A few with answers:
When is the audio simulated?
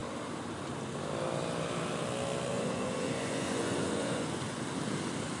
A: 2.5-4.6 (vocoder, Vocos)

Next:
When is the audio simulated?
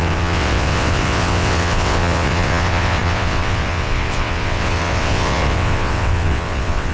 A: 0.0-6.9 (vocoder, WaveNeXt)